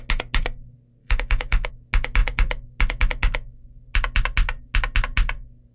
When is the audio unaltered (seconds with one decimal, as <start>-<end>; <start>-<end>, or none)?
0.0-1.0; 1.7-5.7